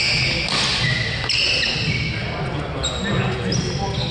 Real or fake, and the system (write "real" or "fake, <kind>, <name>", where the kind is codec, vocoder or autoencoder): real